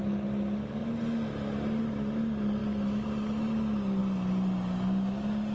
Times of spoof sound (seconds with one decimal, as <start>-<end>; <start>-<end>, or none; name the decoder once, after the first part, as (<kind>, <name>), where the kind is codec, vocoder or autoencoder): none